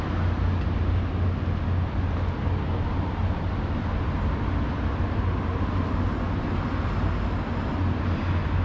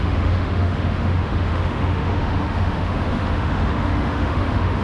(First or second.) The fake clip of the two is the second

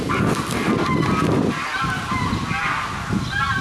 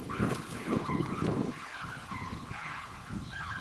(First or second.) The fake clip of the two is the second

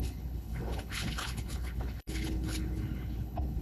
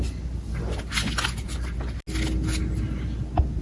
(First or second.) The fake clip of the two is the first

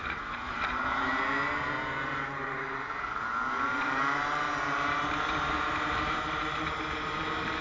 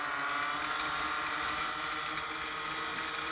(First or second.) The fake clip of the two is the first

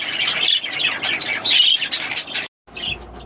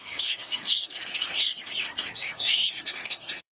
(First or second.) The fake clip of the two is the second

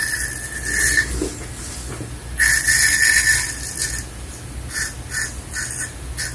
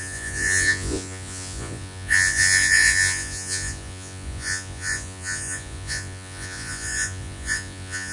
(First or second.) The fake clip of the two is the second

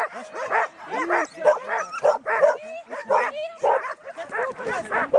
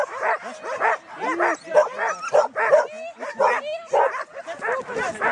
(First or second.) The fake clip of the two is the first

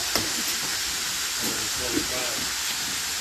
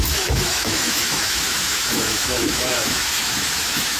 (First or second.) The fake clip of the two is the second